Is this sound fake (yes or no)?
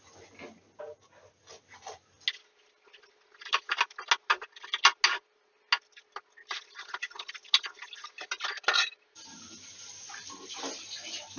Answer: no